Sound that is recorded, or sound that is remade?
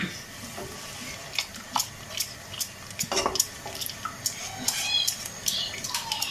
recorded